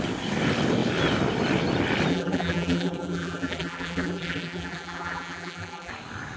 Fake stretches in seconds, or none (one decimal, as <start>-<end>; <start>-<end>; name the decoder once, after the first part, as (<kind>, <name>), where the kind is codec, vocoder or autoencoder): 2.1-5.9 (vocoder, BigVGAN v2)